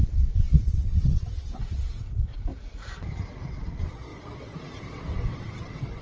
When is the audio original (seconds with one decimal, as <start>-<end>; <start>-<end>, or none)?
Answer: 2.5-3.5; 4.1-4.8